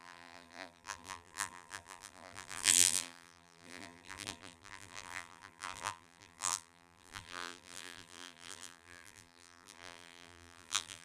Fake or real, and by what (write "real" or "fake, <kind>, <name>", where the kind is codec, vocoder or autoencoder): fake, vocoder, BigVGAN v2